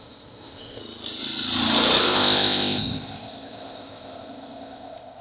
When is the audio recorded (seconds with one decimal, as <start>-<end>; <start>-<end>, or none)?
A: 0.8-2.0